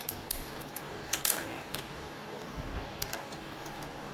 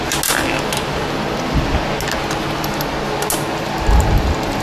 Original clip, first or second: second